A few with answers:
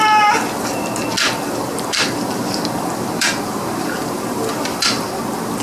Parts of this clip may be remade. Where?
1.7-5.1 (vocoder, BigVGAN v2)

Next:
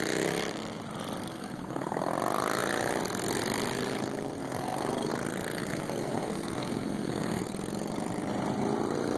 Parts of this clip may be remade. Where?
1.2-2.1 (codec, SNAC); 4.4-5.1; 5.6-7.5

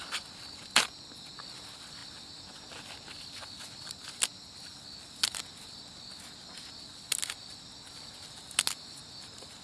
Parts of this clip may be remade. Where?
none

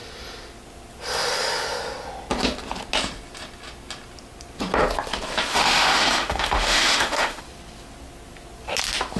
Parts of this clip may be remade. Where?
5.5-7.4 (autoencoder, DAC-VAE)

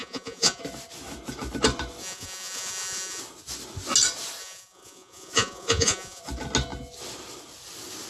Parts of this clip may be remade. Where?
0.0-0.6 (vocoder, Vocos); 2.0-3.2; 4.4-6.2

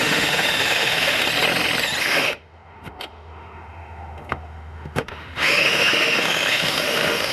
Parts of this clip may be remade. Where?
0.0-1.2 (autoencoder, DAC-VAE); 2.0-7.3